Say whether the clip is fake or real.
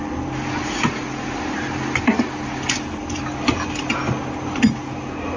real